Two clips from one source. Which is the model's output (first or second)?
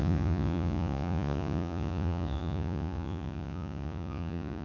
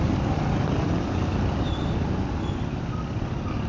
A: first